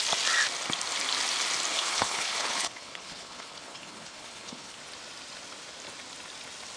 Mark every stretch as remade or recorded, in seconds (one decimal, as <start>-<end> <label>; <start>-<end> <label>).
0.0-1.7 recorded; 1.7-4.8 remade; 4.8-6.8 recorded